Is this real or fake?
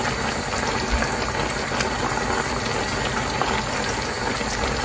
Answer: real